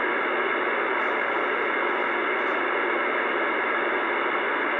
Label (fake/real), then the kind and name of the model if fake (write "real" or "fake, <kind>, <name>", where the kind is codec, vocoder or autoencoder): real